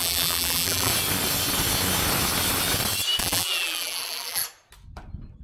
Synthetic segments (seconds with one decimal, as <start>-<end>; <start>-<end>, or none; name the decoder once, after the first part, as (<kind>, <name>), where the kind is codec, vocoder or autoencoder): 0.0-0.9 (vocoder, BigVGAN v2); 3.2-4.4